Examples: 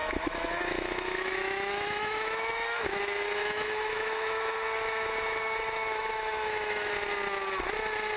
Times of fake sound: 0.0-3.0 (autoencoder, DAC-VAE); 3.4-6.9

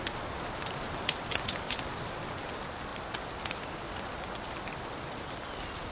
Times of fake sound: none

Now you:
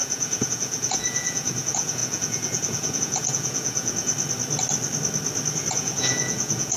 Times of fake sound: 0.0-4.1 (vocoder, Vocos); 5.7-6.8